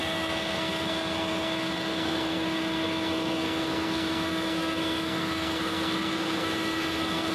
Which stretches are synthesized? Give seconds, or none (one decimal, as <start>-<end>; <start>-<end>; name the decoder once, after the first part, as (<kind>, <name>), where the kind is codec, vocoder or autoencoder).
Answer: 0.0-7.3 (codec, SNAC)